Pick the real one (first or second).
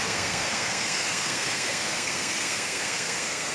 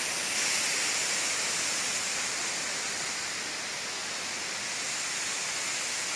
second